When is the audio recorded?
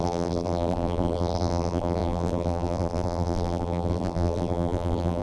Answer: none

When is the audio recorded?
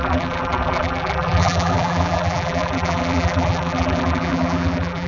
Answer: none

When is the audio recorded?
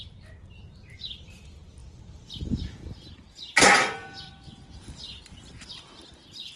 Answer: 0.0-1.8; 4.3-6.6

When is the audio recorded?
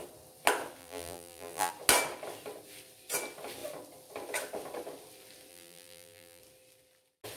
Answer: 0.0-0.8; 1.7-5.5; 6.4-7.4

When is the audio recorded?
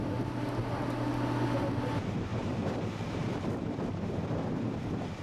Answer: 0.0-2.3; 4.7-5.2